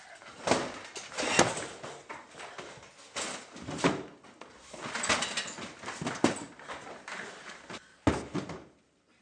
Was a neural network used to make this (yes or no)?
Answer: no